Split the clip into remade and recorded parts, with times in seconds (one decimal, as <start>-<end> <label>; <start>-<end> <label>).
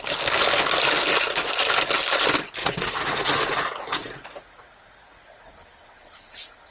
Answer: 0.0-2.6 recorded; 2.6-5.5 remade; 5.5-6.7 recorded